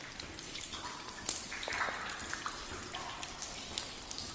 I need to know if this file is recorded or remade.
recorded